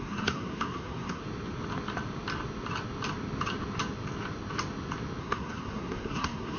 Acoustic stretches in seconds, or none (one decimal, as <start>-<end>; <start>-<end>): 1.2-5.2